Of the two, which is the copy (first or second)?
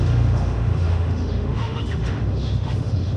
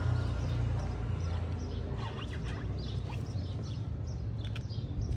first